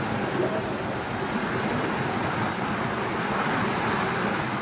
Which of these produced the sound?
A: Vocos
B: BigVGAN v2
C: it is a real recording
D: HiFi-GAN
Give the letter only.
C